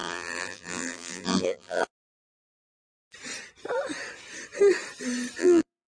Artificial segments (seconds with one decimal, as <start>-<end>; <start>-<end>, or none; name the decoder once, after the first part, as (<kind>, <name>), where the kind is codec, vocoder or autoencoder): 0.0-1.9 (vocoder, BigVGAN v2); 5.4-5.9